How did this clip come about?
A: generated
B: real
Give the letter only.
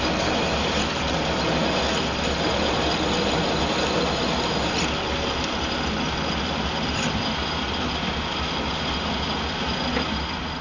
B